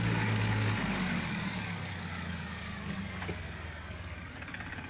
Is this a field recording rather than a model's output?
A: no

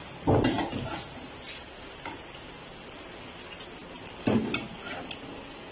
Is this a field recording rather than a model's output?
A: yes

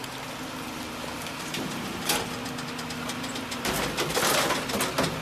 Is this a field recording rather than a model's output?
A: yes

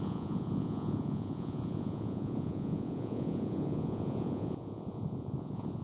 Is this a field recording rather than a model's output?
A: no